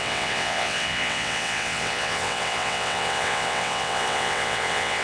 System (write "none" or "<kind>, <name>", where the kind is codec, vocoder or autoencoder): vocoder, WaveNeXt